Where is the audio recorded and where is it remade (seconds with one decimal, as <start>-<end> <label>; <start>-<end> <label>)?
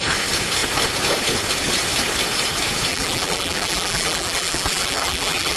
0.0-2.9 recorded; 2.9-5.6 remade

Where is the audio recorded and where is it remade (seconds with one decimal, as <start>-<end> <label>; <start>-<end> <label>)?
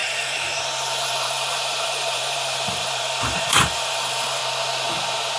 0.0-4.4 remade; 4.4-5.4 recorded